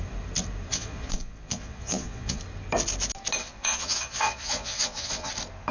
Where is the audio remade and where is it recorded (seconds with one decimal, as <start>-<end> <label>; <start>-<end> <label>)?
0.0-0.7 recorded; 0.7-2.4 remade; 2.4-3.4 recorded; 3.4-5.3 remade; 5.3-5.7 recorded